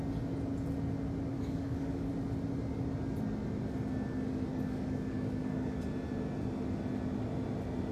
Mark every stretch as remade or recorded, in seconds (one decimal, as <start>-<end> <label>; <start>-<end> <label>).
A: 0.0-1.3 recorded; 1.3-2.1 remade; 2.1-4.5 recorded; 4.5-5.8 remade; 5.8-7.9 recorded